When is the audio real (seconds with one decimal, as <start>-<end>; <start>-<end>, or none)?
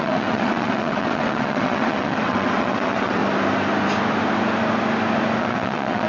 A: 3.2-5.4